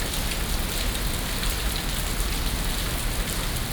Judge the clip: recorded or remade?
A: recorded